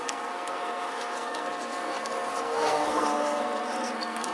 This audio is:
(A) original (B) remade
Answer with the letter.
B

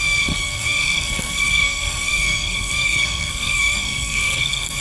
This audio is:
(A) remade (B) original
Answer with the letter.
A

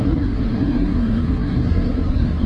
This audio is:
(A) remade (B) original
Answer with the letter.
A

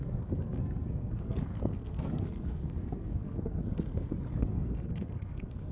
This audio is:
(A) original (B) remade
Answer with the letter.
B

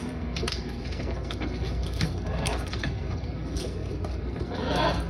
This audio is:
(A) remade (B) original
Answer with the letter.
A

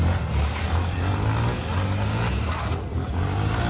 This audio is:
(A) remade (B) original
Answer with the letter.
B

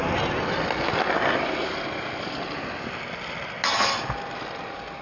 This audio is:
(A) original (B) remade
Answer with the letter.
A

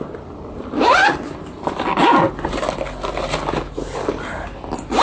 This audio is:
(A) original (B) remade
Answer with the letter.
A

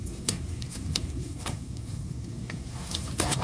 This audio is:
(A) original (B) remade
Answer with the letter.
B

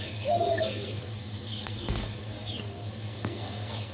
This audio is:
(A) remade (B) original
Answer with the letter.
A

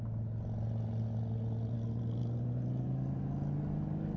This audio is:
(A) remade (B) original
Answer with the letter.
B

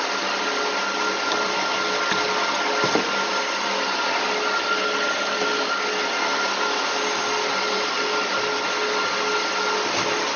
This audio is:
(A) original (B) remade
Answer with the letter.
A